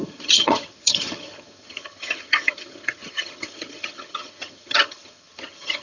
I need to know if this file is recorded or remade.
remade